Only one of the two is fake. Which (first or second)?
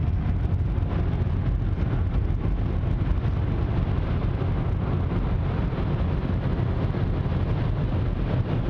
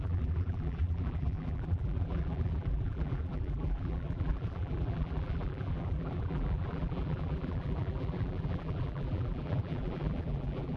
second